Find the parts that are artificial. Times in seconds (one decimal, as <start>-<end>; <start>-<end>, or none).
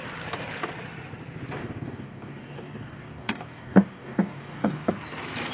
1.6-4.9